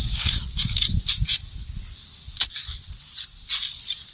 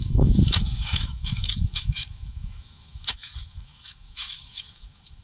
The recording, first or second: first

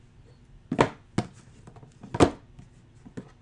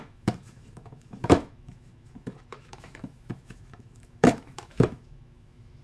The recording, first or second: first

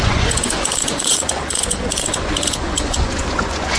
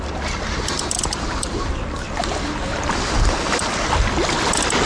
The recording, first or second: second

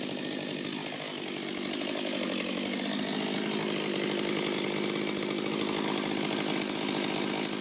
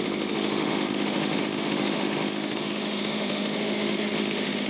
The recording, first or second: first